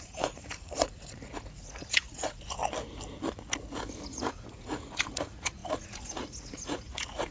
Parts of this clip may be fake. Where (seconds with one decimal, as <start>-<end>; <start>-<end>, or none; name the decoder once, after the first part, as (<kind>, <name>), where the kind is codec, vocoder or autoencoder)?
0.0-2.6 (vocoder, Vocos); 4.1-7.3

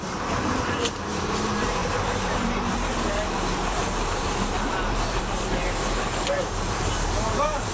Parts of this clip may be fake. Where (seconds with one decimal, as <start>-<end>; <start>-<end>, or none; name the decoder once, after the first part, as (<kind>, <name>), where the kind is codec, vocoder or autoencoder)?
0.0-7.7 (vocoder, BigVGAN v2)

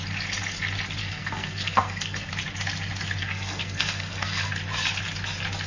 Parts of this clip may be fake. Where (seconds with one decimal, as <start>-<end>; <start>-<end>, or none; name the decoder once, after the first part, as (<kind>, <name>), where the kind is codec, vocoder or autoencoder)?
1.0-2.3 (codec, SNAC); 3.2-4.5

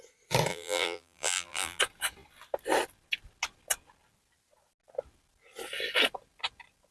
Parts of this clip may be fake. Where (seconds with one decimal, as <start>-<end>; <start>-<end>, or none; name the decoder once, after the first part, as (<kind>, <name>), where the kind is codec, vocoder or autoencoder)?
0.5-1.8 (vocoder, BigVGAN v2)